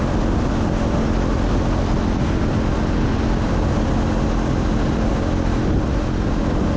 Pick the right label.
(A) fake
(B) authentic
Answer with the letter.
B